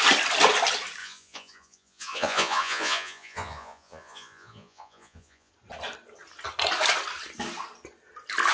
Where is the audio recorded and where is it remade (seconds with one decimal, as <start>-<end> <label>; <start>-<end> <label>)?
0.0-1.0 recorded; 1.0-5.5 remade; 5.5-8.5 recorded